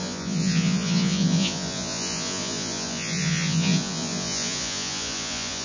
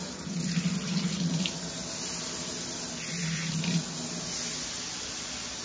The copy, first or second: first